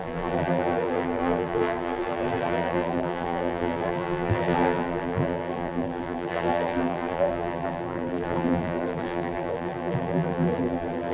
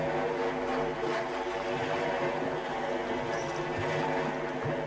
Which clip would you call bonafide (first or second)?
second